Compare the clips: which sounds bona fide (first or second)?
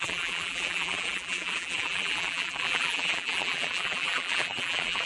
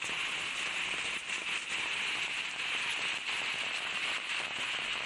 second